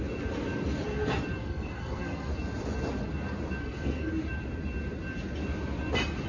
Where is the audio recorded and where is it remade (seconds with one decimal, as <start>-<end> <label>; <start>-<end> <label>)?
0.0-1.4 recorded; 1.4-2.3 remade; 2.3-3.6 recorded; 3.6-4.1 remade; 4.1-6.3 recorded

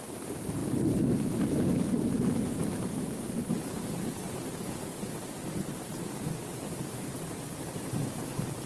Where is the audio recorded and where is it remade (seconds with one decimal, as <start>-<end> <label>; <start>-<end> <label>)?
0.0-0.6 remade; 0.6-2.4 recorded; 2.4-8.7 remade

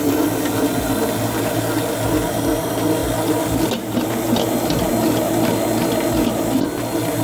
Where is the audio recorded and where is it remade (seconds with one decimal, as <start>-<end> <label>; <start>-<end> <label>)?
0.0-7.2 recorded